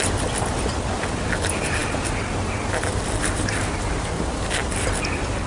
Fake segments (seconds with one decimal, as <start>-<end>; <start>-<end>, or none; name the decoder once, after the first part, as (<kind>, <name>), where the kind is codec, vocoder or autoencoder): none